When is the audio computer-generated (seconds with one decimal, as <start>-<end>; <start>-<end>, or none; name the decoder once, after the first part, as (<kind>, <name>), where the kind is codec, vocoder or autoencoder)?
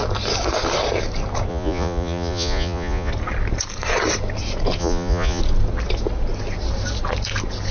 1.5-3.1 (vocoder, Vocos); 4.8-5.4